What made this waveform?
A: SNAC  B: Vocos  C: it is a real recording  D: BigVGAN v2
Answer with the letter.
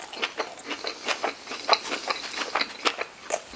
C